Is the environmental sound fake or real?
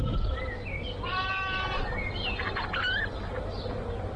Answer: real